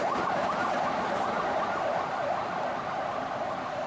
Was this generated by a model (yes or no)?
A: no